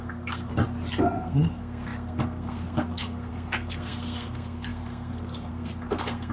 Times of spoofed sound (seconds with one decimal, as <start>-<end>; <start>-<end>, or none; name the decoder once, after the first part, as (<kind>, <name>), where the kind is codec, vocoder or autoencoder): 0.0-0.5 (codec, SNAC); 1.0-6.3

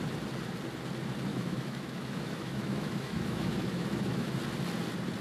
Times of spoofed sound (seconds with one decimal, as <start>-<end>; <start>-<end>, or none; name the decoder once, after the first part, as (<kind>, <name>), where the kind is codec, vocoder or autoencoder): 1.3-4.4 (autoencoder, DAC-VAE)

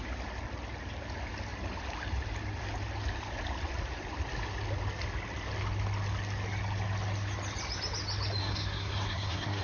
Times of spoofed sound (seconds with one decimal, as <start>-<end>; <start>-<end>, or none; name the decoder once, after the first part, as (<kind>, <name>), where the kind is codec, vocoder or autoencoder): 8.4-9.6 (codec, SNAC)

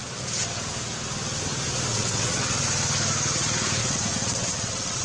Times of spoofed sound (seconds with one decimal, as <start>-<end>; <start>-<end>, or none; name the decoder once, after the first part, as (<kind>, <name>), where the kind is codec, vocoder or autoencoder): 1.9-2.6 (vocoder, WaveNeXt); 3.8-5.0